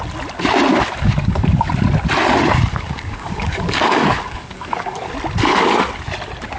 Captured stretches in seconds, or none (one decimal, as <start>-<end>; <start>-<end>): 0.0-0.7; 1.7-2.7; 5.1-6.6